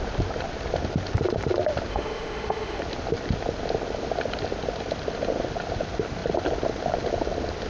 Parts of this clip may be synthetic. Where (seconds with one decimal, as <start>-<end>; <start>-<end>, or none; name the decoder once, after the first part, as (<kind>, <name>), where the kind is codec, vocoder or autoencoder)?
1.9-2.8 (autoencoder, DAC-VAE)